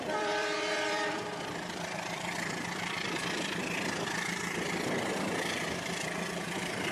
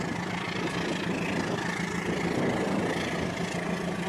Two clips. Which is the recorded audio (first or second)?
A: second